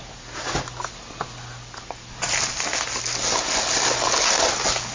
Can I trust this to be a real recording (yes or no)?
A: yes